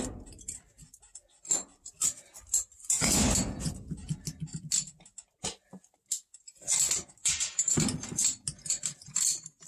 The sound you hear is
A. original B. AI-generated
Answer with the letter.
A